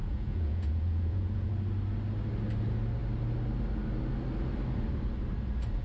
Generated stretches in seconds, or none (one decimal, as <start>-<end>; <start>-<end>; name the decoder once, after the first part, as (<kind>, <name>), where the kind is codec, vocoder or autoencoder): 0.0-1.5 (vocoder, Vocos)